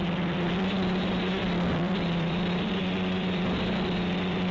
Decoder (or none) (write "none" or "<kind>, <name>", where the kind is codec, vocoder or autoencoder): vocoder, BigVGAN v2